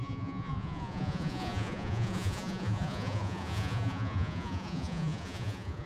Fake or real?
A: fake